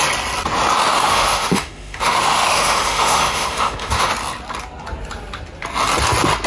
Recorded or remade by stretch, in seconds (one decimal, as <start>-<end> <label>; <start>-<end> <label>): 0.0-0.9 recorded; 0.9-4.1 remade; 4.1-6.5 recorded